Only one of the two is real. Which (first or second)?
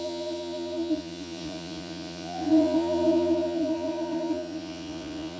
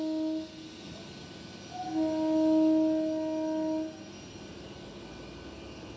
second